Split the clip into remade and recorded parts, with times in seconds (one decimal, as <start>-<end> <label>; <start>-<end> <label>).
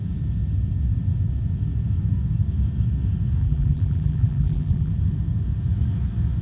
0.0-3.4 recorded; 3.4-4.9 remade; 4.9-6.4 recorded